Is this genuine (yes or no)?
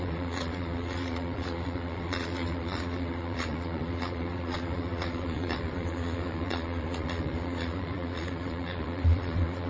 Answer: no